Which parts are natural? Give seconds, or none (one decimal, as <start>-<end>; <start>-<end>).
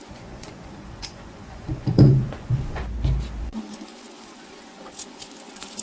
2.8-3.4